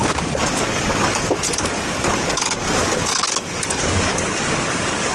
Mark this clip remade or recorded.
remade